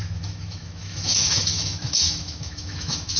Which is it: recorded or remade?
remade